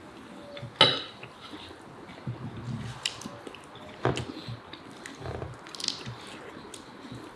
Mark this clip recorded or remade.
recorded